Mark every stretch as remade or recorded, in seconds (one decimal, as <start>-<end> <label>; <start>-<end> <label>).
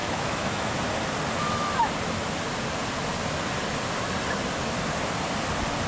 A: 0.0-0.7 remade; 0.7-5.9 recorded